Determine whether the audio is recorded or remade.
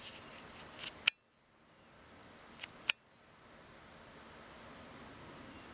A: recorded